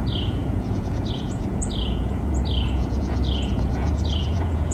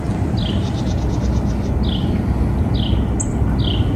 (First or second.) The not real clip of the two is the first